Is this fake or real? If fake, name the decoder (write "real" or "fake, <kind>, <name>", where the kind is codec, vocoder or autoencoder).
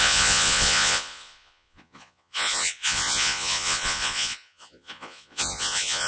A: fake, vocoder, Vocos